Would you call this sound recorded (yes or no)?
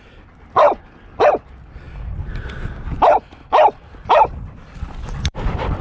no